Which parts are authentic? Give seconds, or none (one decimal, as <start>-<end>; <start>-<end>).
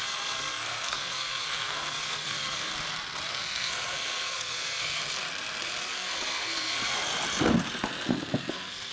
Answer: 2.7-3.3; 5.0-5.8; 7.1-8.5